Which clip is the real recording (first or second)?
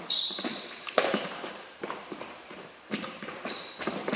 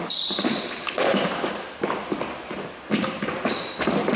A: second